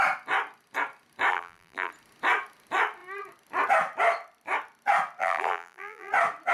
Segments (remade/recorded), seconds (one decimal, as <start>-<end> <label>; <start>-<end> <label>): 0.0-1.3 recorded; 1.3-1.9 remade; 1.9-5.2 recorded; 5.2-6.1 remade; 6.1-6.5 recorded